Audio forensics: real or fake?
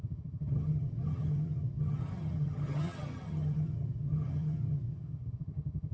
fake